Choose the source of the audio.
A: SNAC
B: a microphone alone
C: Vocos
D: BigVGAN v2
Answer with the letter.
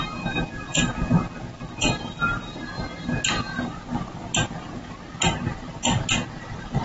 B